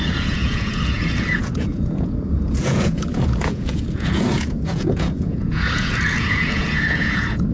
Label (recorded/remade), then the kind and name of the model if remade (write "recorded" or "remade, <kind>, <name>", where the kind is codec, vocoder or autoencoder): remade, vocoder, Vocos